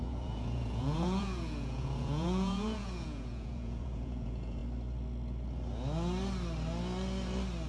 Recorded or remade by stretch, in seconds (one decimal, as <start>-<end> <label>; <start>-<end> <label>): 0.0-4.6 remade; 4.6-7.7 recorded